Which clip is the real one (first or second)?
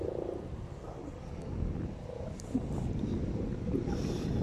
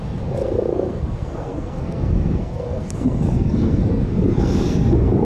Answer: first